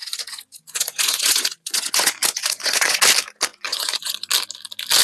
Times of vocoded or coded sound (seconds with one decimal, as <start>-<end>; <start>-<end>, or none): 0.0-3.0; 3.5-4.3